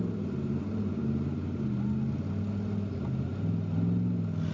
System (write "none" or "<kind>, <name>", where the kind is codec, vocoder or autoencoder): none